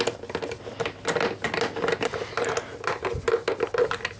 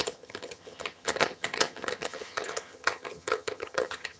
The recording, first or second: first